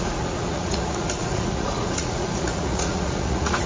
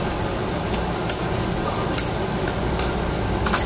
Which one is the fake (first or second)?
first